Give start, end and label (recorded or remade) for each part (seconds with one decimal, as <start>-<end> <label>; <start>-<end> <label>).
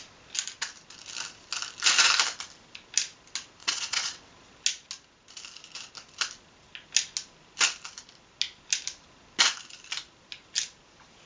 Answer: 0.0-3.6 recorded; 3.6-4.3 remade; 4.3-11.3 recorded